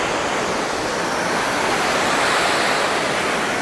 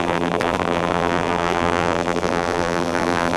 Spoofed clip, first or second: second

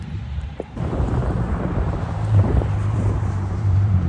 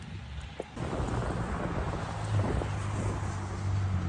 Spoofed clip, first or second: first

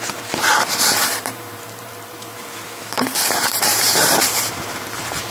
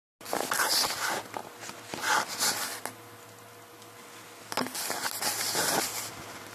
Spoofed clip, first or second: first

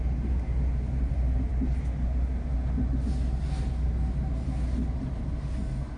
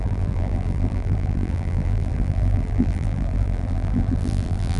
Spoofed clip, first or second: second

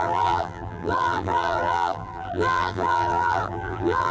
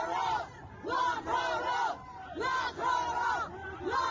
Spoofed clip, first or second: first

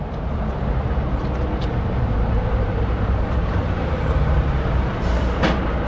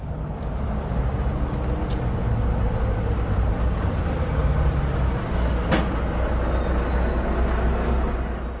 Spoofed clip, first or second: first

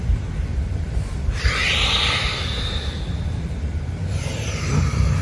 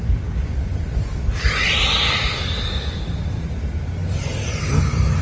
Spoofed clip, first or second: first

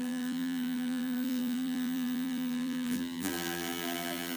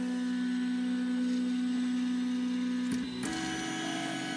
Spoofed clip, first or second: first